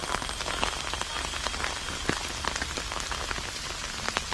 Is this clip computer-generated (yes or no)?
no